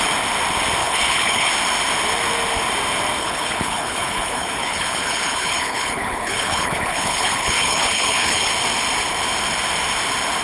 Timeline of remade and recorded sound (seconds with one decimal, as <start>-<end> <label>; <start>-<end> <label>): 0.0-0.8 recorded; 0.8-1.5 remade; 1.5-3.2 recorded; 3.2-8.5 remade; 8.5-10.4 recorded